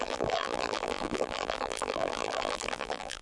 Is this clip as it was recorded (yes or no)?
no